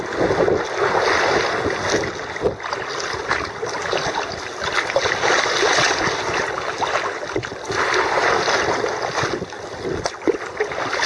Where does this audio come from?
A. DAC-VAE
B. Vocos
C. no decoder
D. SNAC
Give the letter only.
C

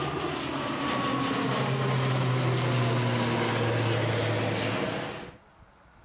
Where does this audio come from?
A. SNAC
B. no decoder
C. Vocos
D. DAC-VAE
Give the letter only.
B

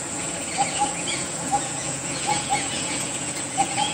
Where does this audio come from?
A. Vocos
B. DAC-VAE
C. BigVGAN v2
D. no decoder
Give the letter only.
A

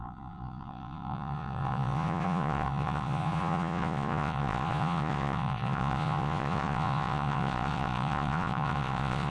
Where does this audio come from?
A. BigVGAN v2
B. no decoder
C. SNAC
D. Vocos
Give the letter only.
D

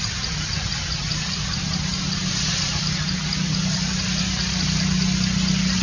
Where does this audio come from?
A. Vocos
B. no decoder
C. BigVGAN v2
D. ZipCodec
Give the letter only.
B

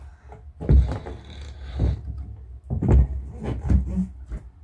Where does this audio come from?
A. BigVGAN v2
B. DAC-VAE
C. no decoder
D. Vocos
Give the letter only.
C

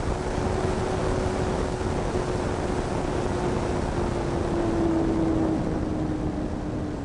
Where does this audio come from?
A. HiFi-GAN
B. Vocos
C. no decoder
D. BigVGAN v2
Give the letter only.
C